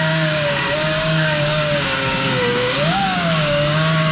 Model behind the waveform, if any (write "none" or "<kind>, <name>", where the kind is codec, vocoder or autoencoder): codec, DAC